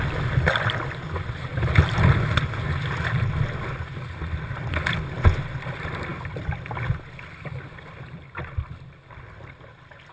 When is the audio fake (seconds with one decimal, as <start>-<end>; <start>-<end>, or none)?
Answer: none